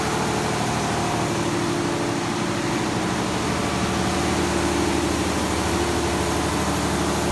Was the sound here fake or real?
real